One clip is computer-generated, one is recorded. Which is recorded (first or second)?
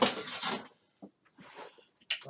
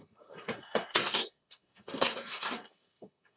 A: first